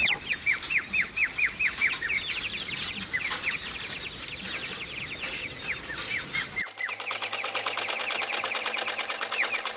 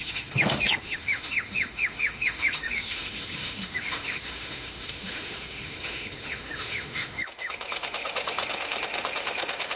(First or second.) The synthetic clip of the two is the second